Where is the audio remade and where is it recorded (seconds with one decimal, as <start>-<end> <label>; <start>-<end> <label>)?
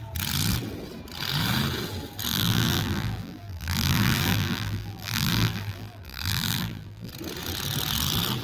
0.0-2.3 recorded; 2.3-7.1 remade; 7.1-8.4 recorded